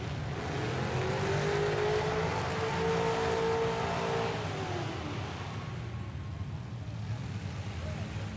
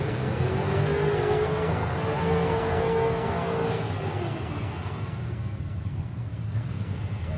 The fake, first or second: second